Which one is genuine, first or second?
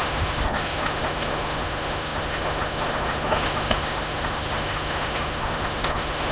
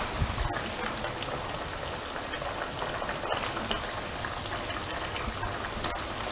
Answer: second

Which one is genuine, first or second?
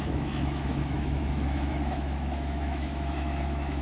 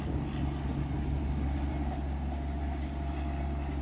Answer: second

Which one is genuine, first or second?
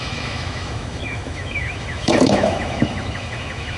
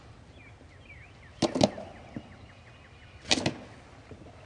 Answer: second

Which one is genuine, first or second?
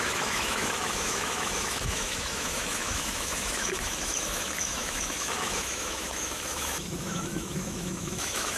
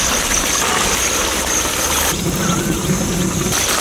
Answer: second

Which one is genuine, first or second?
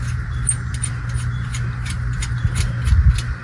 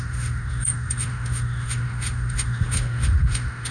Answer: first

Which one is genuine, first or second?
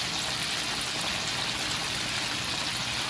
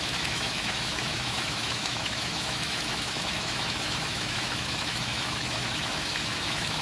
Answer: first